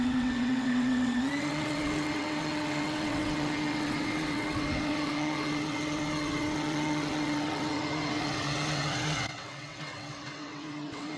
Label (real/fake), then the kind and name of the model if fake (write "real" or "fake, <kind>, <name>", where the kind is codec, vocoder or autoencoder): fake, vocoder, WaveNeXt